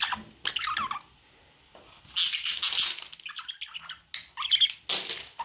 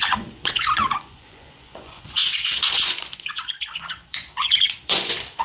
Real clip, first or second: first